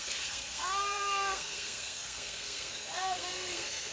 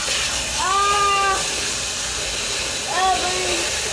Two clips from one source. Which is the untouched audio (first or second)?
second